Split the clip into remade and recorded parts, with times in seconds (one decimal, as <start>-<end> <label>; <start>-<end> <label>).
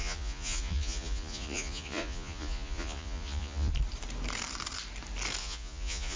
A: 0.0-3.7 remade; 3.7-5.4 recorded; 5.4-6.2 remade